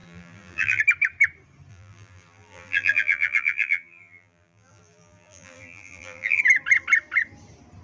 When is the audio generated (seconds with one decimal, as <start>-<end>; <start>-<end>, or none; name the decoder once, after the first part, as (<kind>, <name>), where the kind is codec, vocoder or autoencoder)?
0.0-0.8 (vocoder, BigVGAN v2); 1.7-6.4

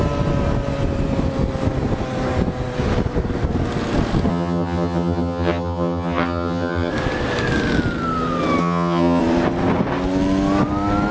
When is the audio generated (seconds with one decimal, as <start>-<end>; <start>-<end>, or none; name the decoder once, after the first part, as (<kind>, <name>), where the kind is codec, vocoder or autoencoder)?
4.3-6.9 (vocoder, HiFi-GAN); 8.6-9.2

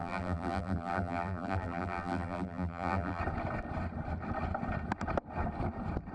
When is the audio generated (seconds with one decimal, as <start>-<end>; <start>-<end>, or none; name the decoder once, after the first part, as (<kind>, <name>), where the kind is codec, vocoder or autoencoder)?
0.0-3.2 (vocoder, BigVGAN v2)

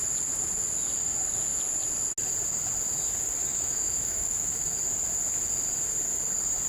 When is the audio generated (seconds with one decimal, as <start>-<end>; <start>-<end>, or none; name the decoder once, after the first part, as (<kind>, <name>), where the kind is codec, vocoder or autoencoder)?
3.5-4.8 (autoencoder, DAC-VAE)

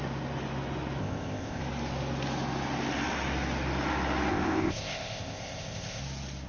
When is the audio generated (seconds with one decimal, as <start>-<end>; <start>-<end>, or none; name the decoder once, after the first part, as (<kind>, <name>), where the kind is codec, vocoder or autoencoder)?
1.0-1.6 (codec, ZipCodec); 4.3-6.0

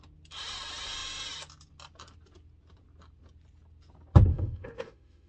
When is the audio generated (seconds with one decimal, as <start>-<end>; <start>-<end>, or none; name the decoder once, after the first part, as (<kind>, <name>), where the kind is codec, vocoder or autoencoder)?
4.3-5.3 (autoencoder, DAC-VAE)

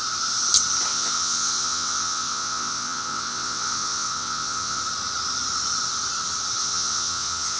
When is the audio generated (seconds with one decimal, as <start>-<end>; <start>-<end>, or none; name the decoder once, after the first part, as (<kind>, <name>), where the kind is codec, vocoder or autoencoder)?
0.9-4.8 (vocoder, WaveNeXt); 6.6-7.6

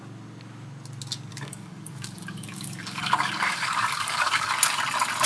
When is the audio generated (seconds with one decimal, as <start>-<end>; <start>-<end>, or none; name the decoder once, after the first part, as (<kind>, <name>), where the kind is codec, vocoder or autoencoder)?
1.3-4.5 (codec, DAC)